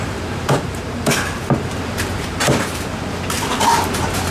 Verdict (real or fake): fake